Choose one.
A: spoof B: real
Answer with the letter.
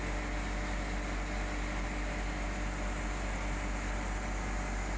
B